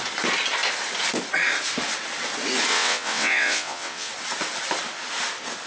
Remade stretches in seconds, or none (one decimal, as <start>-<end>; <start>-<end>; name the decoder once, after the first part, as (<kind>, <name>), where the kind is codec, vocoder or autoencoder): 2.7-4.1 (vocoder, WaveNeXt)